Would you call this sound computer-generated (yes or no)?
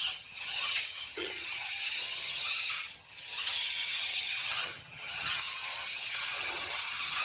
yes